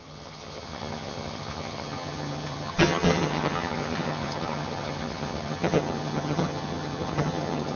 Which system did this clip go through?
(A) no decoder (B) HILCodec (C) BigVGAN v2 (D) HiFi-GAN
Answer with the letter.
D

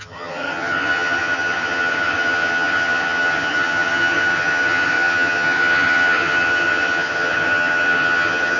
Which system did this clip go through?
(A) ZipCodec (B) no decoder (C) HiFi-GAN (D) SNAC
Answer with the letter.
C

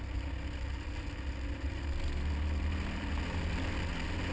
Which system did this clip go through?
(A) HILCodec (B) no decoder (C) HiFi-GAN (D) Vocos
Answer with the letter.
B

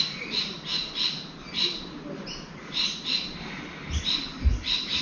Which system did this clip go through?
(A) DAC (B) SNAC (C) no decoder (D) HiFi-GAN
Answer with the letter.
C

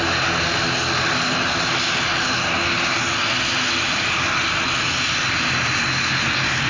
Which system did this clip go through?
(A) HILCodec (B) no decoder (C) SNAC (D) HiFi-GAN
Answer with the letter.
B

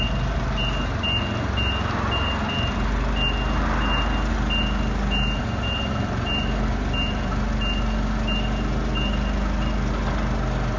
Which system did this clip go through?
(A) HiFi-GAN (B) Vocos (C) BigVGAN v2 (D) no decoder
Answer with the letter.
D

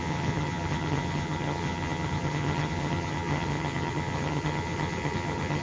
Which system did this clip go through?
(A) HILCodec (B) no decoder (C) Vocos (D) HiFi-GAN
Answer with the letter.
D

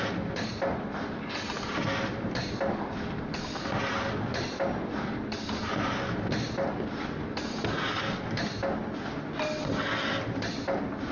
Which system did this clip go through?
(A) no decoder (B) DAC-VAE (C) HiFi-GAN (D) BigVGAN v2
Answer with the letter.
A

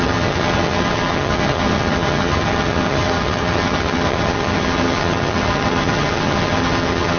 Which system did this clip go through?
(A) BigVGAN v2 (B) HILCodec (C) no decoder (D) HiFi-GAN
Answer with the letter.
D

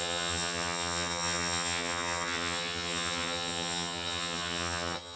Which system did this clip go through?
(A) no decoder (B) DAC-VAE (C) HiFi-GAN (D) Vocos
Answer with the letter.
C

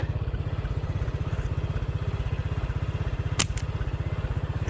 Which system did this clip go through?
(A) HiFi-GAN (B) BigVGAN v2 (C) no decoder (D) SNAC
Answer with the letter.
C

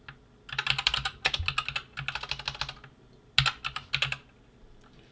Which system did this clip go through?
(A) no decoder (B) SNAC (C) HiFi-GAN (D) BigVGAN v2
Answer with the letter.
A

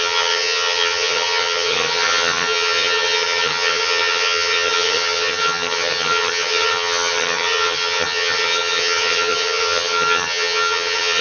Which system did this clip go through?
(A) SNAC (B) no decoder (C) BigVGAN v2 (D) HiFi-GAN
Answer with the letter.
D